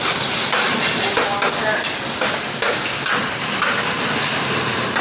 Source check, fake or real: real